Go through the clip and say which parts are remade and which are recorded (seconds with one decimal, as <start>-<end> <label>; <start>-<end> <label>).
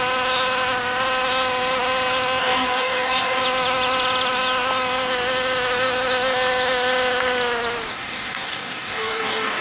0.0-2.4 recorded; 2.4-3.4 remade; 3.4-7.9 recorded; 7.9-9.6 remade